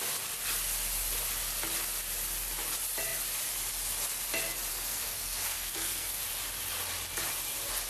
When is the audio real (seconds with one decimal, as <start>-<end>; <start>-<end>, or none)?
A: 0.0-4.7; 6.2-7.9